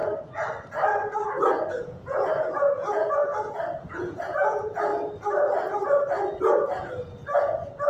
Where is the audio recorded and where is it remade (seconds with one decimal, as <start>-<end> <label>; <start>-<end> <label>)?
0.0-1.8 recorded; 1.8-3.2 remade; 3.2-3.8 recorded; 3.8-4.9 remade; 4.9-6.4 recorded; 6.4-7.9 remade